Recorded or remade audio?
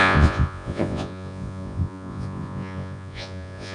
remade